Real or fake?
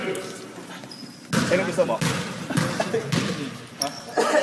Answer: real